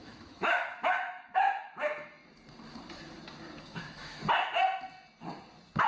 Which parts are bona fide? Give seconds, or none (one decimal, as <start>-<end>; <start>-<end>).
2.2-3.6; 4.2-5.9